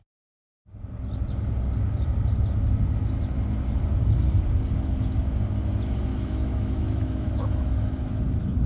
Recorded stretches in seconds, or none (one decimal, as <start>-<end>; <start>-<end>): 0.0-6.1; 8.2-8.7